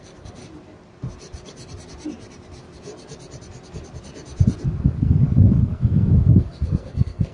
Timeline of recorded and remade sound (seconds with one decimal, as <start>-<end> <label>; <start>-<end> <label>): 0.0-0.4 remade; 0.4-4.8 recorded; 4.8-7.3 remade